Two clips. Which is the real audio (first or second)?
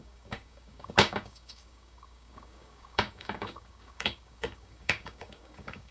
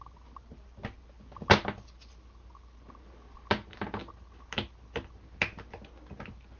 second